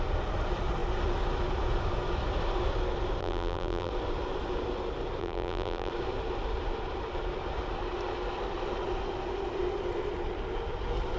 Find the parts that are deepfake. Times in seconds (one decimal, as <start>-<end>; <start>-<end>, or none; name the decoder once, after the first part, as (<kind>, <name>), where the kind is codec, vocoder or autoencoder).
3.2-3.9 (vocoder, BigVGAN v2); 5.2-5.9

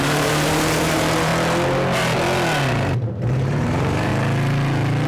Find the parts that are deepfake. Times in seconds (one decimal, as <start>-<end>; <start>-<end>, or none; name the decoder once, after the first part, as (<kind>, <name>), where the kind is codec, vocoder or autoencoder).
0.0-1.3 (vocoder, BigVGAN v2); 3.1-4.1